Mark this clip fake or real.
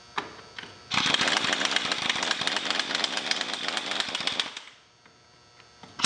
real